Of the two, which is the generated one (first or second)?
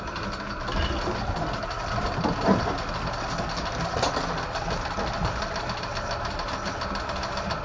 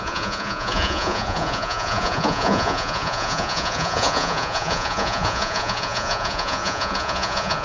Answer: second